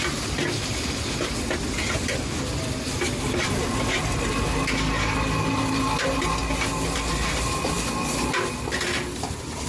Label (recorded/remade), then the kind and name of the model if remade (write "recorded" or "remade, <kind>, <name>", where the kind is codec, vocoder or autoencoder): recorded